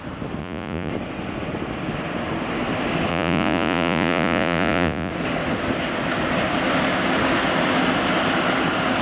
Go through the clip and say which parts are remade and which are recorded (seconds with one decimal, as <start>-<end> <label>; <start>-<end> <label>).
0.0-0.4 recorded; 0.4-0.9 remade; 0.9-3.1 recorded; 3.1-5.1 remade; 5.1-9.0 recorded